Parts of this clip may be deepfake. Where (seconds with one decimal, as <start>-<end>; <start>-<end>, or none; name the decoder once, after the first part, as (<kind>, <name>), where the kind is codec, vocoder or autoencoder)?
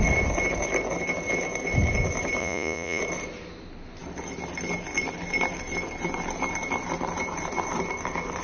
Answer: 2.4-3.0 (vocoder, Vocos)